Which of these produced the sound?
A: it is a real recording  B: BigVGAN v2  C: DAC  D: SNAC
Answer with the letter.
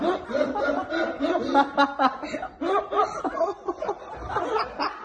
A